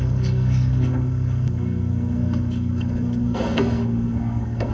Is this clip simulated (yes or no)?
yes